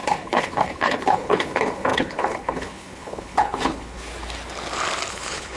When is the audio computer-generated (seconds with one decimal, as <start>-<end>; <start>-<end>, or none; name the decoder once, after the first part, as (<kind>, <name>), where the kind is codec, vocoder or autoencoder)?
0.0-4.1 (codec, HILCodec); 5.1-5.6